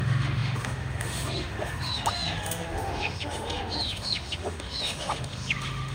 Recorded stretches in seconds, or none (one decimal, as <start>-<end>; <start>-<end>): none